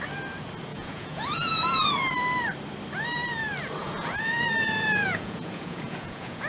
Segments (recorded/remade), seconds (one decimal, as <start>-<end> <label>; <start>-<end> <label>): 0.0-0.7 recorded; 0.7-1.9 remade; 1.9-3.8 recorded; 3.8-6.5 remade